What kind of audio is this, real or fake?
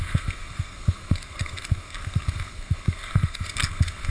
fake